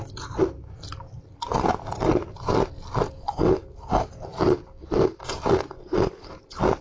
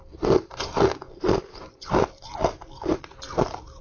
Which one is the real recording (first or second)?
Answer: first